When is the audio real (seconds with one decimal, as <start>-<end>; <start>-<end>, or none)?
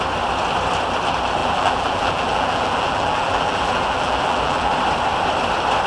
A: 0.0-1.4; 4.8-5.9